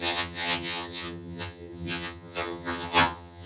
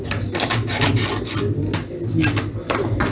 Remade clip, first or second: first